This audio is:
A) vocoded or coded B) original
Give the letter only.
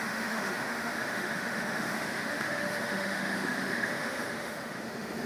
A